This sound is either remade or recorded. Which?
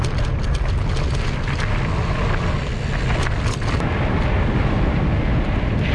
recorded